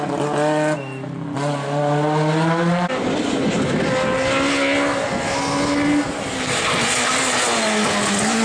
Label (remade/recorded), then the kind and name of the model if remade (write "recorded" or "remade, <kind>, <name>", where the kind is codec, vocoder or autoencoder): recorded